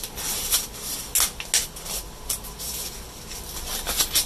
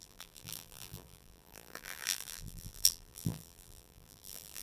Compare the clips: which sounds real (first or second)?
first